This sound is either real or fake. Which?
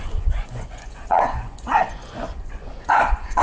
fake